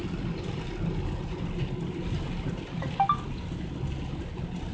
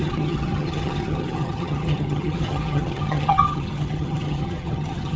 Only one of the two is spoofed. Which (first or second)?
second